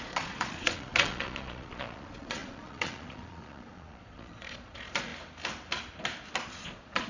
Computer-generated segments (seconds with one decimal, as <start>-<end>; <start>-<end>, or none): 0.0-5.1; 6.5-7.1